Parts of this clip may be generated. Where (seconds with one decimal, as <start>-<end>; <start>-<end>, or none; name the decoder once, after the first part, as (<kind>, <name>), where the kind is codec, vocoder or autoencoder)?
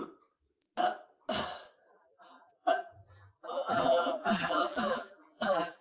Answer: 1.9-5.8 (vocoder, BigVGAN v2)